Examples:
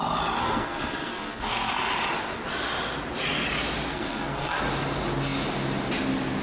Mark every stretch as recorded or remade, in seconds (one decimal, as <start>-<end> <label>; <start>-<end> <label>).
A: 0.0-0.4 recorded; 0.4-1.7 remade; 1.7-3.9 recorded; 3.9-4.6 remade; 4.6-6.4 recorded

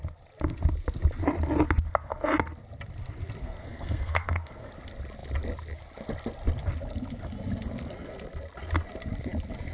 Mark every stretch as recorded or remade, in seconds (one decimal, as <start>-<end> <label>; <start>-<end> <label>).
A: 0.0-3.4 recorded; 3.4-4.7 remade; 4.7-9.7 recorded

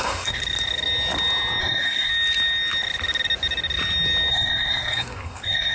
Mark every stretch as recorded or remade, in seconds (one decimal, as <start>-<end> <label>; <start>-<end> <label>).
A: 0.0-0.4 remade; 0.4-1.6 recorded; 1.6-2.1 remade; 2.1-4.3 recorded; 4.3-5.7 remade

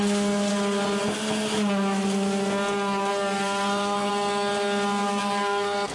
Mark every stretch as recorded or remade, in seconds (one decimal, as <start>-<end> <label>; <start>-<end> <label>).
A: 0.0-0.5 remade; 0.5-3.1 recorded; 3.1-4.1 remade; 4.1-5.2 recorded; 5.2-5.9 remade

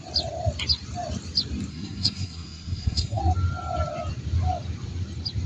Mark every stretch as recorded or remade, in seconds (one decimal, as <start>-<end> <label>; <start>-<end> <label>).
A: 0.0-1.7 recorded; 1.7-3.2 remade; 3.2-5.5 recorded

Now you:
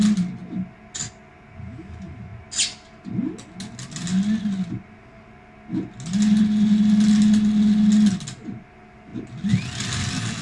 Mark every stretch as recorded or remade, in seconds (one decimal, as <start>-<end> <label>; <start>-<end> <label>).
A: 0.0-10.4 recorded

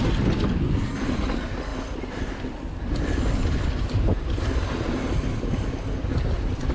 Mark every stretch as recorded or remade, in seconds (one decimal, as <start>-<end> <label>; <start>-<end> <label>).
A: 0.0-6.7 recorded

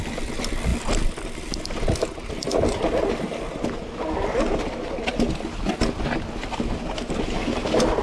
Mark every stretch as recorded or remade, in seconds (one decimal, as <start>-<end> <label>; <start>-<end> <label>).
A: 0.0-8.0 recorded